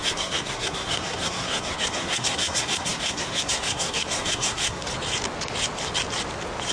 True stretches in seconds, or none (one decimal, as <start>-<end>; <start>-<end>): 4.9-6.7